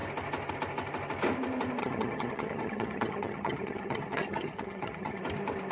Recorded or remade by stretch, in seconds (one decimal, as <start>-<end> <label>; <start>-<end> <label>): 0.0-1.8 recorded; 1.8-5.2 remade; 5.2-5.7 recorded